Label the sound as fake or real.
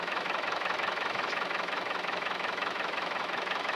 fake